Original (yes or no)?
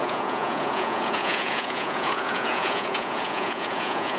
no